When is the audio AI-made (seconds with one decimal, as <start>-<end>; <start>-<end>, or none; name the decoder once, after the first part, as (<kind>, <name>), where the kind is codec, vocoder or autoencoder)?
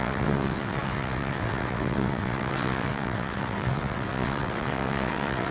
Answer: 0.0-5.5 (vocoder, WaveNeXt)